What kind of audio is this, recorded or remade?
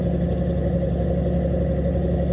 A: recorded